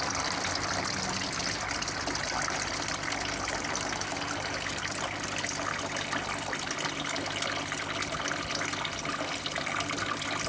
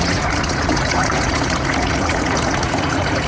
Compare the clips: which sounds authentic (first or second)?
first